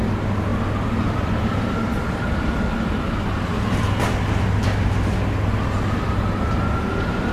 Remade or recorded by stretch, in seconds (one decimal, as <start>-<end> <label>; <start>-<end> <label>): 0.0-0.5 recorded; 0.5-4.9 remade; 4.9-7.3 recorded